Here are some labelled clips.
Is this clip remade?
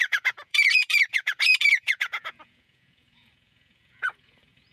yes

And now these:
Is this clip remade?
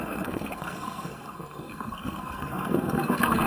yes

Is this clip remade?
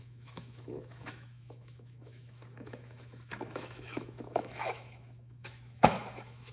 yes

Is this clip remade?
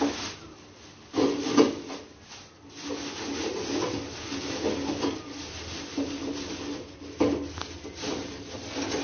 no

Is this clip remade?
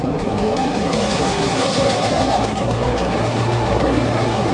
yes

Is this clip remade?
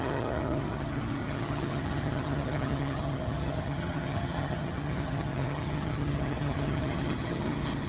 yes